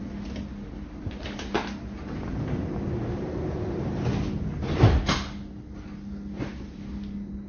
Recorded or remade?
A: recorded